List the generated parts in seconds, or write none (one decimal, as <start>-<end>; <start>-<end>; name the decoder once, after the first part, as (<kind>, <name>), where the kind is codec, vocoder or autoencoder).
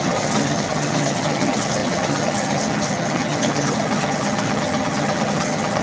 0.0-5.8 (vocoder, HiFi-GAN)